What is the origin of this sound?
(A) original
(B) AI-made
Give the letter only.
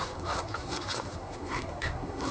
B